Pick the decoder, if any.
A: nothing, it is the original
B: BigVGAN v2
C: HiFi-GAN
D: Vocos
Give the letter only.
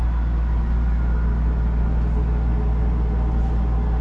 A